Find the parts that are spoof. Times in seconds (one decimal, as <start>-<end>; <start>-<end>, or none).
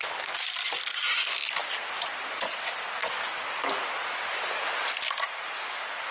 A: none